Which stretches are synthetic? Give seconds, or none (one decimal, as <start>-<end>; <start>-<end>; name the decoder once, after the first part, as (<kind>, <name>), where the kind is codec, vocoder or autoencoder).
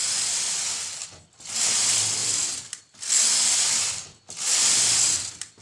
none